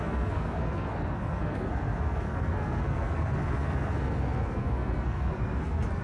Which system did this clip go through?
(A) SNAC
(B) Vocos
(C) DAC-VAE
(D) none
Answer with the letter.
A